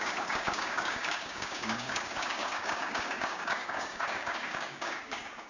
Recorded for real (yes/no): no